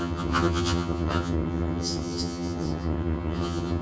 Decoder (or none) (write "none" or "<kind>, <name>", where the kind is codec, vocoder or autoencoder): vocoder, HiFi-GAN